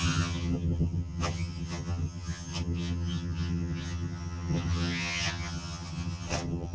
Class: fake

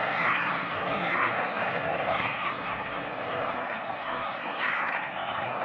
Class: fake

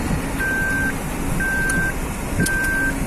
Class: real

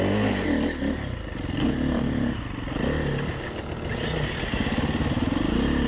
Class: real